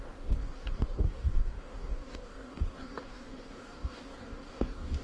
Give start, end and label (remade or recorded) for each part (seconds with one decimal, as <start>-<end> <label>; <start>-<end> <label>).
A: 0.0-5.0 remade